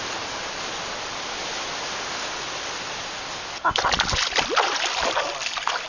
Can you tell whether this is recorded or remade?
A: recorded